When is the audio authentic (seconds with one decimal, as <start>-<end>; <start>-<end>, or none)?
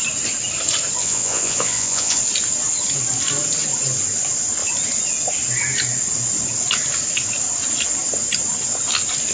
0.0-1.0; 2.2-9.3